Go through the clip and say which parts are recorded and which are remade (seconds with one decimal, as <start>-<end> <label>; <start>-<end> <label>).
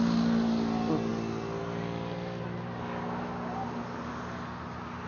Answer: 0.0-5.1 recorded